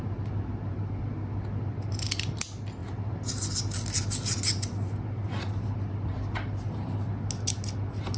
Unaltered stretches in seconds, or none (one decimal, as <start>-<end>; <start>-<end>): 0.0-8.2